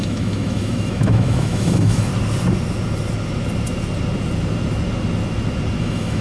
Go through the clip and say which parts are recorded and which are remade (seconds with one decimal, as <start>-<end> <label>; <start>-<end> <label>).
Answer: 0.0-2.1 remade; 2.1-5.8 recorded; 5.8-6.2 remade

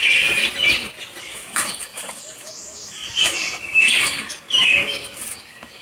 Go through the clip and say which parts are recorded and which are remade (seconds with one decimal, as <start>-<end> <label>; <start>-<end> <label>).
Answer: 0.0-0.4 remade; 0.4-1.2 recorded; 1.2-5.8 remade

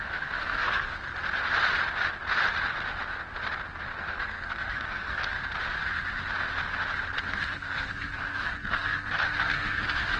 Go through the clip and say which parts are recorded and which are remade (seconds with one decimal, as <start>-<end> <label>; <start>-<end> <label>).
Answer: 0.0-1.0 remade; 1.0-4.0 recorded; 4.0-5.4 remade; 5.4-7.2 recorded; 7.2-10.2 remade

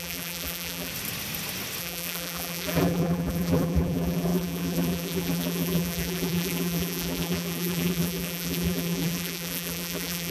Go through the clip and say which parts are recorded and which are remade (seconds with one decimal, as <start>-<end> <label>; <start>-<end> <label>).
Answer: 0.0-0.9 remade; 0.9-1.8 recorded; 1.8-10.3 remade

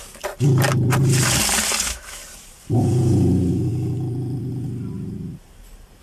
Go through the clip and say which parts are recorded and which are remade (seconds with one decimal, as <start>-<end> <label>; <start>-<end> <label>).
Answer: 0.0-1.8 recorded; 1.8-2.2 remade; 2.2-6.0 recorded